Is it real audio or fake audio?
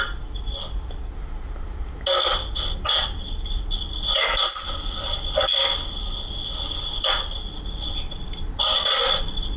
real